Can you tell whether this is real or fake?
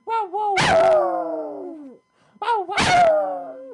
real